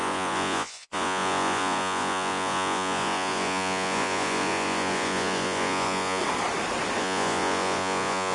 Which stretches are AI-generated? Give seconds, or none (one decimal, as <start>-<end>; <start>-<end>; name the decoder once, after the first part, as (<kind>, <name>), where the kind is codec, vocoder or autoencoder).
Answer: 0.0-6.2 (vocoder, Vocos); 7.0-8.3